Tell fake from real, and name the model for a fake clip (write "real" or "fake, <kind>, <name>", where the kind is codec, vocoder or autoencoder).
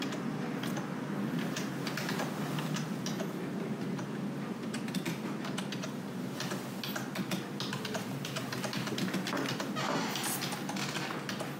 real